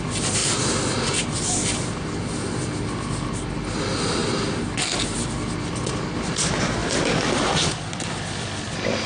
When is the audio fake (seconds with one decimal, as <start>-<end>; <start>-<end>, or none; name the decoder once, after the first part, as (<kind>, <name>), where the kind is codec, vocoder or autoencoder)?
none